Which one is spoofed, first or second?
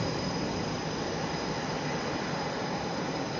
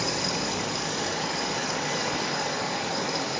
second